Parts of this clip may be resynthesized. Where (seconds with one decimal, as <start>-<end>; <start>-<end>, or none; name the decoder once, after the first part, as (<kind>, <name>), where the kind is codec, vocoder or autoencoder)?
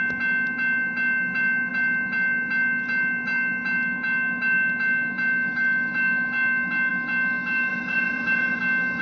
7.7-8.6 (vocoder, Vocos)